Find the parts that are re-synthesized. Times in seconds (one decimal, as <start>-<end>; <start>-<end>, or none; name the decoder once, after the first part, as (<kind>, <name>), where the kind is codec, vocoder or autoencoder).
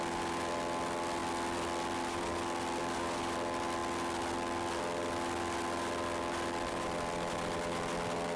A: none